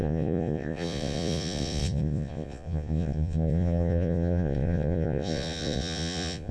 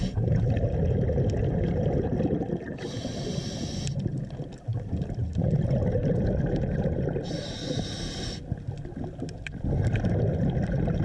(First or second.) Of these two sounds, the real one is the second